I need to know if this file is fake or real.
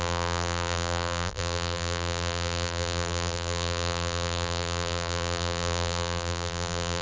fake